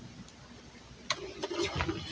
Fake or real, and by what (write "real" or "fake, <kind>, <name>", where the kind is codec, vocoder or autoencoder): real